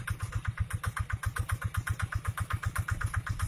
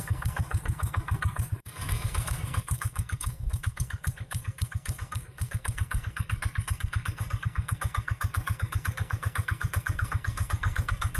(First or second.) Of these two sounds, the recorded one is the first